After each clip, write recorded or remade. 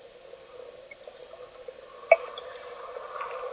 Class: recorded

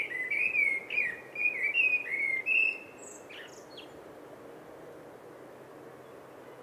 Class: recorded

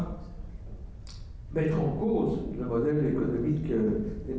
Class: recorded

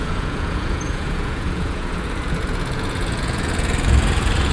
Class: remade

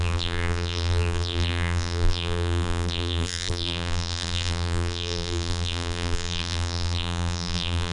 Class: remade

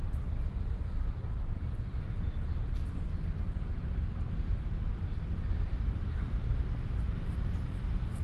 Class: recorded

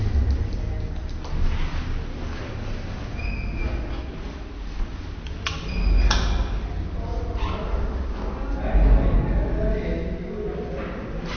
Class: recorded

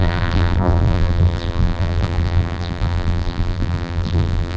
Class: remade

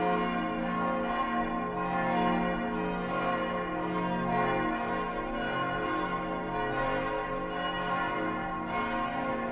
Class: recorded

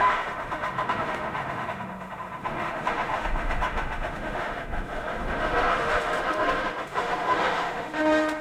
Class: remade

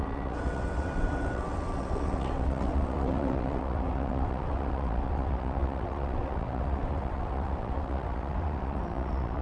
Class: remade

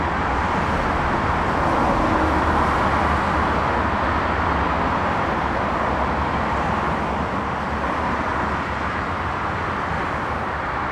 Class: recorded